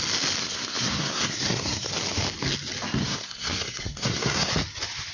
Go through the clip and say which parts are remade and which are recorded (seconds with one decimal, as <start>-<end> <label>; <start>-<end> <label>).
0.0-0.4 recorded; 0.4-1.9 remade; 1.9-3.0 recorded; 3.0-4.5 remade; 4.5-5.1 recorded